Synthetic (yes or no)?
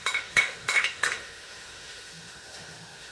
yes